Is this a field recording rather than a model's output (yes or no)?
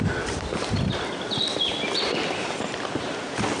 no